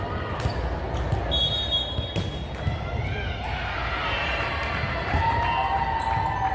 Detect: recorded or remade recorded